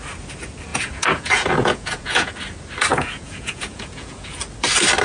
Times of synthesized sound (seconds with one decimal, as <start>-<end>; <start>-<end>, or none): 0.7-2.3; 2.9-4.4